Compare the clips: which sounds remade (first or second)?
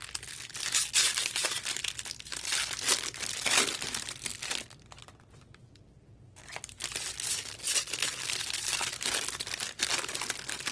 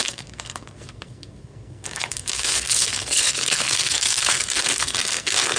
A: second